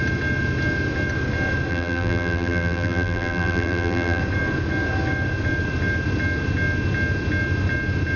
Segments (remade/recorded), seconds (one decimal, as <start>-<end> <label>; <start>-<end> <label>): 0.0-1.7 recorded; 1.7-4.2 remade; 4.2-8.2 recorded

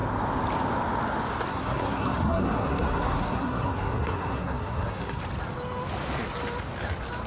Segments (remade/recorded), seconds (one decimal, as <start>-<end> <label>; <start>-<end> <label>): 0.0-1.5 recorded; 1.5-5.2 remade; 5.2-7.3 recorded

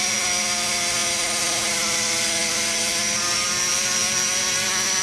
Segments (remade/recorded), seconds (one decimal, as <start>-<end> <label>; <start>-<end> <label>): 0.0-5.0 recorded

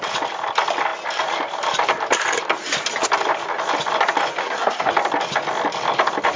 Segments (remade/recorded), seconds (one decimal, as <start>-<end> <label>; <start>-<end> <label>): 0.0-4.4 recorded; 4.4-4.9 remade; 4.9-6.4 recorded

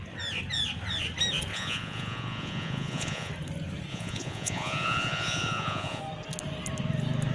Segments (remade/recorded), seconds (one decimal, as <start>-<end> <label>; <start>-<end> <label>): 0.0-1.5 recorded; 1.5-3.3 remade; 3.3-3.9 recorded; 3.9-6.0 remade; 6.0-7.3 recorded

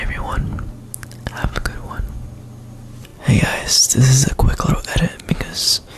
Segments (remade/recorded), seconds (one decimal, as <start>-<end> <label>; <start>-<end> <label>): 0.0-6.0 recorded

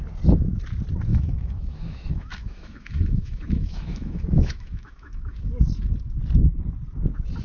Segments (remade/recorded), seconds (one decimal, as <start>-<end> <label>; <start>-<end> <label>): 0.0-1.1 recorded; 1.1-5.5 remade; 5.5-7.4 recorded